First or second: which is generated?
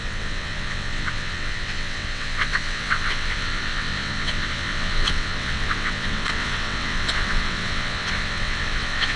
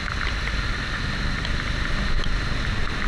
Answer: first